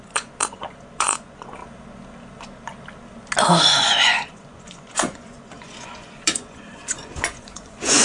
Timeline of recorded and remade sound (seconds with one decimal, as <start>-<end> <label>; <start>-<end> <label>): 0.0-1.6 remade; 1.6-3.5 recorded; 3.5-8.0 remade